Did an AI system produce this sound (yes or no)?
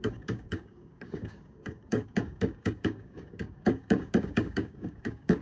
yes